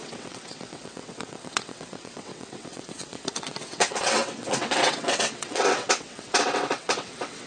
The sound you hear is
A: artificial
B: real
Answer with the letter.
A